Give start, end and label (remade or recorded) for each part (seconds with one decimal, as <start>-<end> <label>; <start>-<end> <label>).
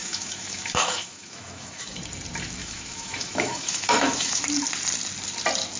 0.0-2.0 remade; 2.0-2.6 recorded; 2.6-4.4 remade; 4.4-5.8 recorded